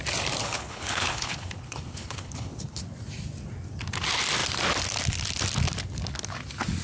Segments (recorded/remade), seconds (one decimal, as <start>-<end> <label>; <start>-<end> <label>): 0.0-0.4 recorded; 0.4-2.8 remade; 2.8-6.8 recorded